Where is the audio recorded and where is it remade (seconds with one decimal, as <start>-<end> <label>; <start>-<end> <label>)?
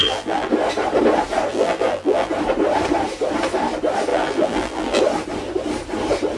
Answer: 0.0-0.5 remade; 0.5-1.5 recorded; 1.5-2.3 remade; 2.3-4.1 recorded; 4.1-5.0 remade; 5.0-6.4 recorded